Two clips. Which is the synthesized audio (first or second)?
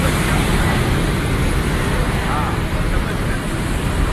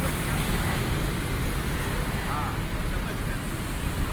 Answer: first